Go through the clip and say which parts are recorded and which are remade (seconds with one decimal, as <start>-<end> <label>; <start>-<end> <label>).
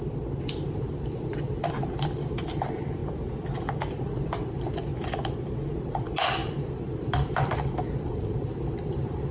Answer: 0.0-3.0 remade; 3.0-3.6 recorded; 3.6-4.9 remade; 4.9-5.8 recorded; 5.8-9.3 remade